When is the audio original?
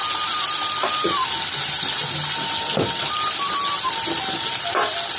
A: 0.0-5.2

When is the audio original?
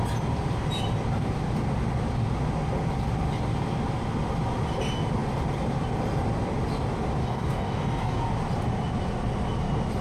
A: 0.0-7.2; 8.2-10.0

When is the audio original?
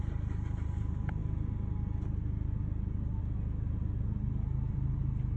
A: 0.0-5.4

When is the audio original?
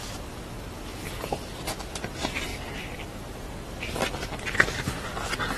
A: 0.0-5.6